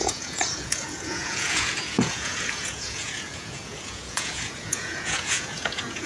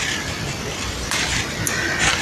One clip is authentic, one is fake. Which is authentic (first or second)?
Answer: second